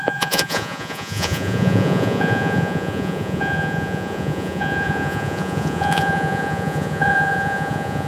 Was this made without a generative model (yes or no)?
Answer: no